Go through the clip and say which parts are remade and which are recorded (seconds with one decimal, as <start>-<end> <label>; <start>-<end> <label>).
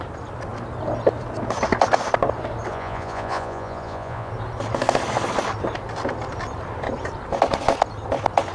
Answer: 0.0-2.7 recorded; 2.7-4.3 remade; 4.3-8.5 recorded